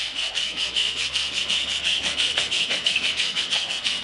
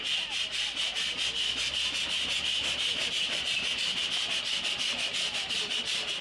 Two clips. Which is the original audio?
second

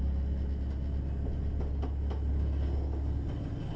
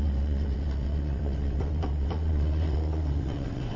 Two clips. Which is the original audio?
first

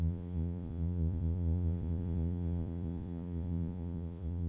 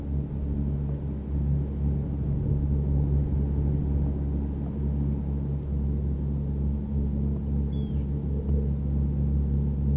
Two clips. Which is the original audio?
second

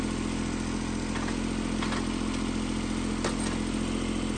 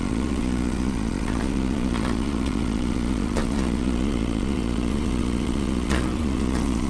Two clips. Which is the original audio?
first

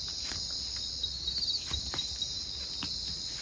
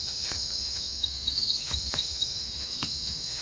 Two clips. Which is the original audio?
first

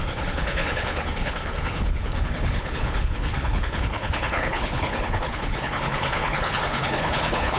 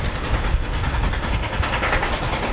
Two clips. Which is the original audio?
second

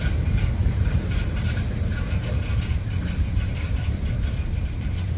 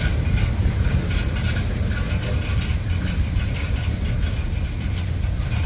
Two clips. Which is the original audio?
second